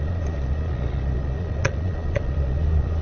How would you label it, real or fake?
fake